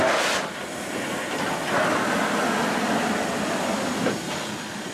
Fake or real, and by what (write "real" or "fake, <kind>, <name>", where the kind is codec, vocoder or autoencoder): real